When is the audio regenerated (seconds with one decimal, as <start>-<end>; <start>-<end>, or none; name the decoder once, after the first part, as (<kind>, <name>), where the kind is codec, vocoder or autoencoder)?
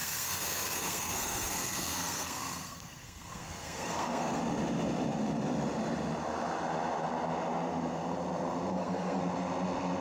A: 0.0-4.4 (codec, SNAC); 8.7-9.2